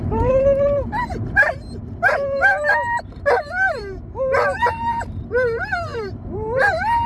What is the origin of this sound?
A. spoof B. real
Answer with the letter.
A